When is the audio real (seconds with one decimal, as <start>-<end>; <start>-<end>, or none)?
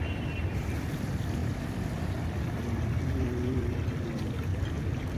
none